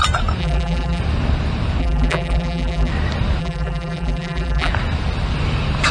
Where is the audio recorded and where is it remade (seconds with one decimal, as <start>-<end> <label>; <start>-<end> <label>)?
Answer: 0.0-0.4 recorded; 0.4-1.0 remade; 1.0-1.8 recorded; 1.8-2.9 remade; 2.9-3.4 recorded; 3.4-4.7 remade; 4.7-5.9 recorded

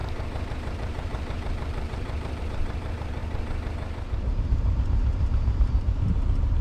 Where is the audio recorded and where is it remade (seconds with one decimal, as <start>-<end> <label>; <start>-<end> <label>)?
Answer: 0.0-3.2 remade; 3.2-4.3 recorded; 4.3-6.6 remade

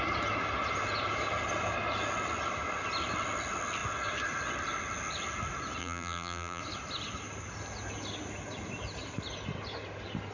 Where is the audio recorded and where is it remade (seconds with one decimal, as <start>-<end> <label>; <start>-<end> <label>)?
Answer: 0.0-5.8 recorded; 5.8-6.6 remade; 6.6-10.3 recorded

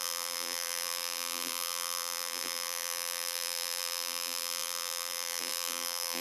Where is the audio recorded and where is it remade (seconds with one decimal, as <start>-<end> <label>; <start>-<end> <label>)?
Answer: 0.0-6.2 remade